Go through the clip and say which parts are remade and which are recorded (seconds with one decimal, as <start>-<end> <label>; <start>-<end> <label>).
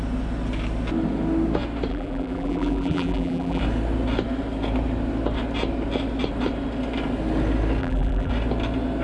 0.0-1.9 recorded; 1.9-3.6 remade; 3.6-7.8 recorded; 7.8-8.3 remade; 8.3-9.0 recorded